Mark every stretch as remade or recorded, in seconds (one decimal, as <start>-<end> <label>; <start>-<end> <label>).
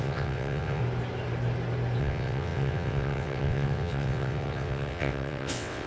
0.0-0.8 remade; 0.8-2.0 recorded; 2.0-5.9 remade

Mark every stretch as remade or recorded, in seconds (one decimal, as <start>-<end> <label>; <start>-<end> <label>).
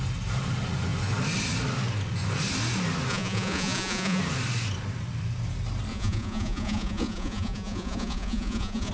0.0-3.1 recorded; 3.1-4.2 remade; 4.2-5.9 recorded; 5.9-8.9 remade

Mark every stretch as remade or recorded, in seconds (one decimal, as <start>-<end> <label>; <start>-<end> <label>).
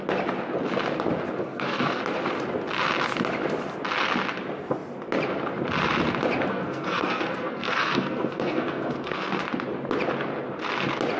0.0-1.4 recorded; 1.4-2.0 remade; 2.0-6.5 recorded; 6.5-9.4 remade; 9.4-11.2 recorded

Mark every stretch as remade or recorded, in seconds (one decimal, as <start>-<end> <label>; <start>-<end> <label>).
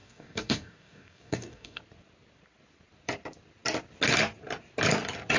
0.0-1.8 remade; 1.8-5.4 recorded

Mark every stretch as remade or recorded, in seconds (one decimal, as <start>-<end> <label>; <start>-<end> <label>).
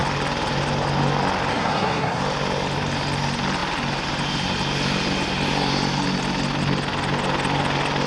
0.0-1.5 recorded; 1.5-2.2 remade; 2.2-8.1 recorded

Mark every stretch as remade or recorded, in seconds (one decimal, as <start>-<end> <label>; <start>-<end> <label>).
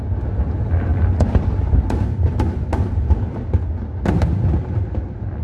0.0-0.9 recorded; 0.9-3.4 remade; 3.4-5.4 recorded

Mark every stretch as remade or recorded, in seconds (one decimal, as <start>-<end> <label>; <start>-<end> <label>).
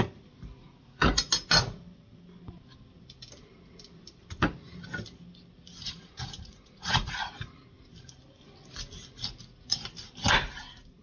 0.0-0.6 recorded; 0.6-1.3 remade; 1.3-5.8 recorded; 5.8-7.3 remade; 7.3-11.0 recorded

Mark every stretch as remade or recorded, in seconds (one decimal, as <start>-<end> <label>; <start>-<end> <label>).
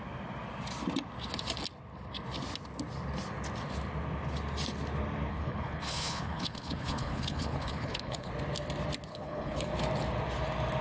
0.0-5.3 recorded; 5.3-8.3 remade; 8.3-9.1 recorded; 9.1-9.7 remade; 9.7-10.8 recorded